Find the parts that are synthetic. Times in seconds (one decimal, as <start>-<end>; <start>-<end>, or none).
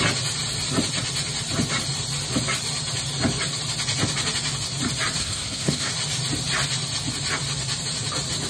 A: 5.2-5.9